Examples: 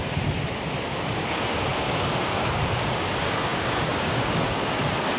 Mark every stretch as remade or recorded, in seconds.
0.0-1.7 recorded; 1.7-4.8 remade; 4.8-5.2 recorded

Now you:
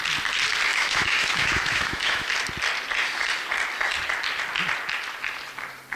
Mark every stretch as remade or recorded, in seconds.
0.0-0.7 recorded; 0.7-2.3 remade; 2.3-6.0 recorded

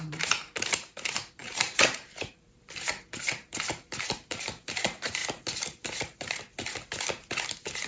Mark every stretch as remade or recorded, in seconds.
0.0-5.2 remade; 5.2-7.9 recorded